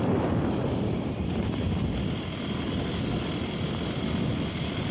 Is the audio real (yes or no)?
yes